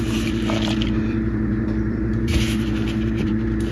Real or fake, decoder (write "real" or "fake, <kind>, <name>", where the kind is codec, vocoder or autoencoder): fake, vocoder, BigVGAN v2